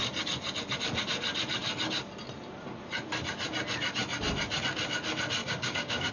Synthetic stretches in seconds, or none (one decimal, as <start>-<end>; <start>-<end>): 5.4-6.1